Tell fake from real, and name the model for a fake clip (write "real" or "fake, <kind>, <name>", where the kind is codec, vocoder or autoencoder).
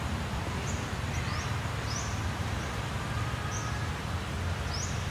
real